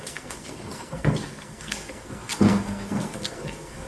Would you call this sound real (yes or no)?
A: no